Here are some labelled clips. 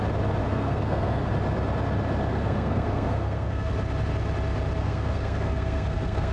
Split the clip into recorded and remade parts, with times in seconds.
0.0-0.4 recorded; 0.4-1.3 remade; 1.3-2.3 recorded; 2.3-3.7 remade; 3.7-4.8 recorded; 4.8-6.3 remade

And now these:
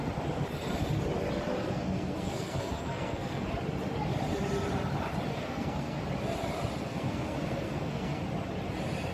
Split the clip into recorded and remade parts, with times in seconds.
0.0-1.6 recorded; 1.6-3.5 remade; 3.5-5.3 recorded; 5.3-6.0 remade; 6.0-6.9 recorded; 6.9-8.2 remade; 8.2-9.1 recorded

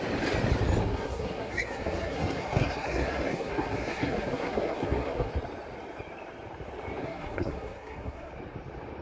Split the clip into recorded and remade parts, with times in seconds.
0.0-0.8 recorded; 0.8-5.3 remade; 5.3-7.0 recorded; 7.0-8.3 remade; 8.3-9.0 recorded

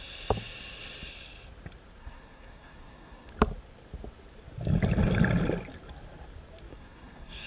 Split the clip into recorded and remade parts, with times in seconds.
0.0-2.0 recorded; 2.0-3.3 remade; 3.3-6.7 recorded; 6.7-7.5 remade